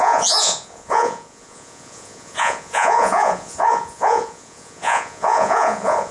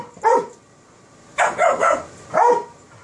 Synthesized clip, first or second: first